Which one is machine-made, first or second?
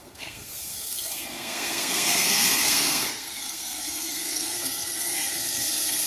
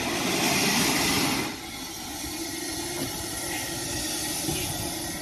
first